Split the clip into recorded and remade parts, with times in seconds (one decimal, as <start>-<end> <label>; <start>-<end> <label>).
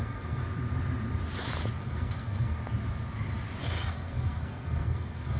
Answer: 0.0-0.4 remade; 0.4-1.8 recorded; 1.8-2.6 remade; 2.6-3.6 recorded; 3.6-5.4 remade